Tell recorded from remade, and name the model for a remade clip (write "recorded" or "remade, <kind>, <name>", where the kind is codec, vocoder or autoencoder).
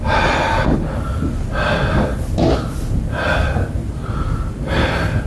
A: recorded